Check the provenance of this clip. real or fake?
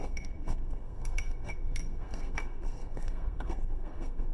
fake